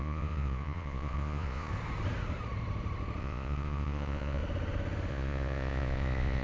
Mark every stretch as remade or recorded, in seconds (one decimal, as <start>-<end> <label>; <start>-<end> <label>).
0.0-1.7 remade; 1.7-3.2 recorded; 3.2-4.4 remade; 4.4-5.1 recorded; 5.1-6.4 remade